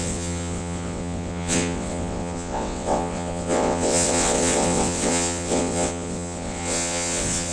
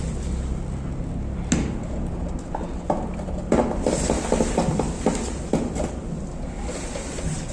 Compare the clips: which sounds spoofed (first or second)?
first